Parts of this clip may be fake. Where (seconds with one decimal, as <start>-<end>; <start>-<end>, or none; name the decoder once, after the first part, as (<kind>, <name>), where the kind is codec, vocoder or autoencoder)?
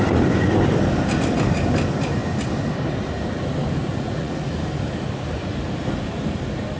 3.9-4.5 (vocoder, Vocos)